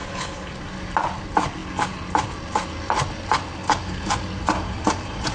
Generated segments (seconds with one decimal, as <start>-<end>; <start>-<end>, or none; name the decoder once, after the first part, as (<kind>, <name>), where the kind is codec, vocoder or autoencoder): 0.0-0.5 (codec, HILCodec)